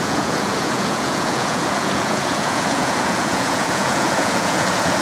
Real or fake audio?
fake